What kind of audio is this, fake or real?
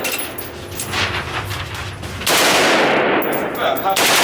real